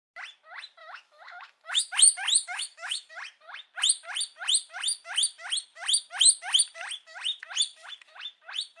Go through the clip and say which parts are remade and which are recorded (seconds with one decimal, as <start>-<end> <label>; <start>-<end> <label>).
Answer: 0.0-0.8 recorded; 0.8-1.8 remade; 1.8-2.4 recorded; 2.4-3.1 remade; 3.1-8.8 recorded